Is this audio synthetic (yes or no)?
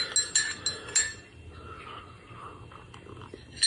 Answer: no